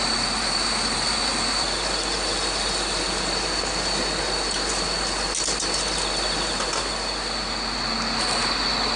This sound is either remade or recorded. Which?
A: recorded